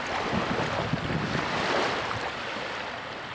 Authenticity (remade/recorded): recorded